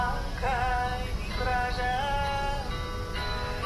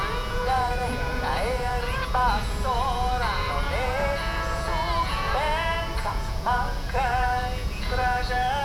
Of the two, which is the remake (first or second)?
second